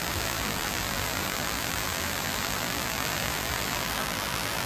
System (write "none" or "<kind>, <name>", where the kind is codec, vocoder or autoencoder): vocoder, BigVGAN v2